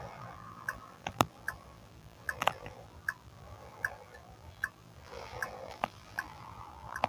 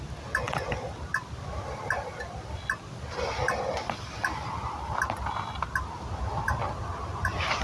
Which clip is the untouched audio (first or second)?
second